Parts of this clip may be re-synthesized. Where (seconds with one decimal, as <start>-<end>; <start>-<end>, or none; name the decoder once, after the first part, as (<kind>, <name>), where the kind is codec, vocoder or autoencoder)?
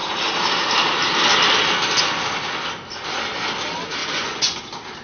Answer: 4.0-4.6 (vocoder, Vocos)